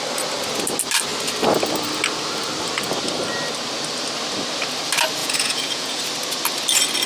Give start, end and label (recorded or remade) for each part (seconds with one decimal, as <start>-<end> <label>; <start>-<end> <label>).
0.0-5.2 recorded; 5.2-6.0 remade; 6.0-7.1 recorded